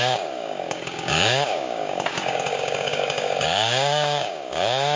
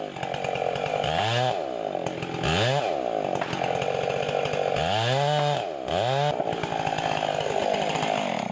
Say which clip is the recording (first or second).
second